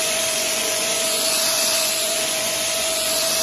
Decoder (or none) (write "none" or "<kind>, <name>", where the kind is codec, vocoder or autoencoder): vocoder, Vocos